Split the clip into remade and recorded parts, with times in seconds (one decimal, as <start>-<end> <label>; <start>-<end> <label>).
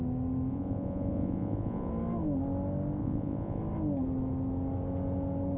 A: 0.0-0.5 recorded; 0.5-1.9 remade; 1.9-3.0 recorded; 3.0-3.6 remade; 3.6-5.6 recorded